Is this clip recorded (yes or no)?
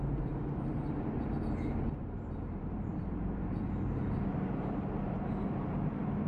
no